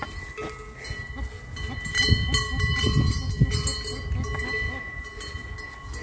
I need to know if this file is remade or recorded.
recorded